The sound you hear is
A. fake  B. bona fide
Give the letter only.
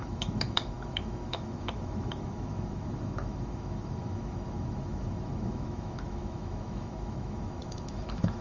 A